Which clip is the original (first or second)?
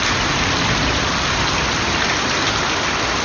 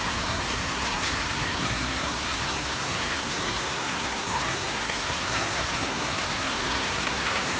first